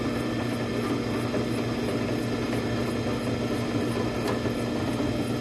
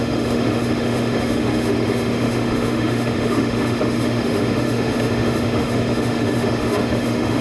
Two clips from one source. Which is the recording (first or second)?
first